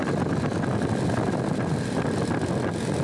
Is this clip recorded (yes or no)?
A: yes